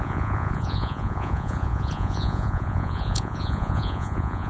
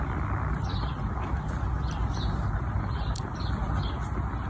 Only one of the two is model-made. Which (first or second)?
first